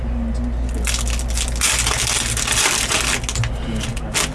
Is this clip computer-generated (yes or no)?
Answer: no